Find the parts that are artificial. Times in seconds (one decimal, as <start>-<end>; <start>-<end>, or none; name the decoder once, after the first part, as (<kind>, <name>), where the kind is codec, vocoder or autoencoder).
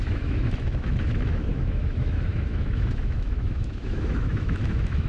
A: 0.0-5.1 (autoencoder, DAC-VAE)